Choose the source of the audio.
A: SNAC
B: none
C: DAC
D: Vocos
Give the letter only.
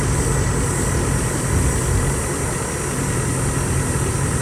B